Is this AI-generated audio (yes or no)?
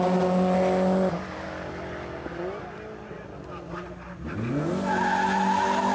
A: no